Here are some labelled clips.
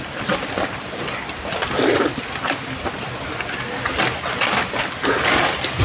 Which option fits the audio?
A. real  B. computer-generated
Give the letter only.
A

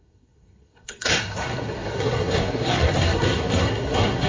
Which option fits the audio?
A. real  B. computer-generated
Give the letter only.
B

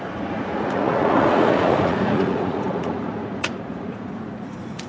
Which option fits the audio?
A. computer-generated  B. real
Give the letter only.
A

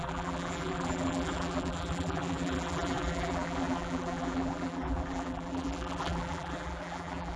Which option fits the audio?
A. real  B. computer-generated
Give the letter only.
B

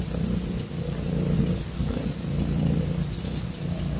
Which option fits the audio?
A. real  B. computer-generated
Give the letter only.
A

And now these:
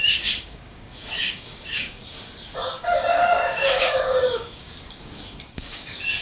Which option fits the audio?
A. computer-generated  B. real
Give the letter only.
A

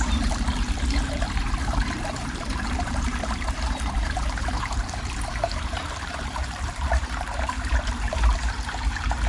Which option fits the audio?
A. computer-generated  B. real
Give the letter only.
A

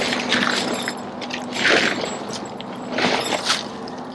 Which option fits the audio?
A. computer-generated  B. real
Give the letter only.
B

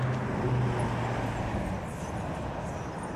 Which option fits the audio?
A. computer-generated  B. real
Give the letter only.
B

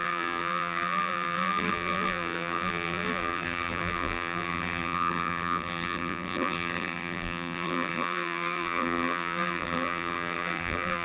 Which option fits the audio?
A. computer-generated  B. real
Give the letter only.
A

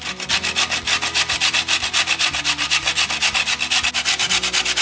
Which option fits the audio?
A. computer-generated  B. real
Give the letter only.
B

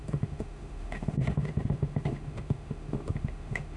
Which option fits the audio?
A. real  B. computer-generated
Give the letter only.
B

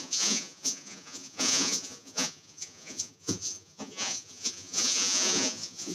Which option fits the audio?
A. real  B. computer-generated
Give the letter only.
B